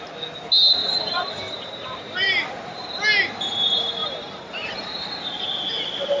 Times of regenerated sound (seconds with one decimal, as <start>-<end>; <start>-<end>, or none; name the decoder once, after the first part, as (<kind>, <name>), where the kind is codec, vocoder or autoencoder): 0.8-2.8 (vocoder, BigVGAN v2); 4.0-6.2